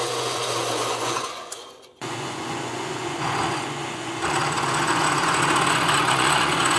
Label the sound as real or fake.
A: fake